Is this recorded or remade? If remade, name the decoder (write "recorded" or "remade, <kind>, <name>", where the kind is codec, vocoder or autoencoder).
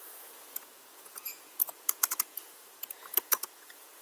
remade, vocoder, Vocos